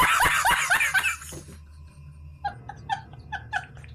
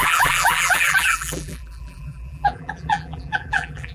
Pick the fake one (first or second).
second